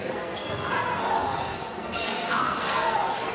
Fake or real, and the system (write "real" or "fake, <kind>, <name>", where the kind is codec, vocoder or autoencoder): fake, codec, SNAC